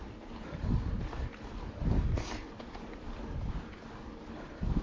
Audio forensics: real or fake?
real